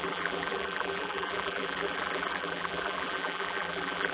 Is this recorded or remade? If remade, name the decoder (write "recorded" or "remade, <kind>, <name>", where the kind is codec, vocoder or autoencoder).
remade, vocoder, BigVGAN v2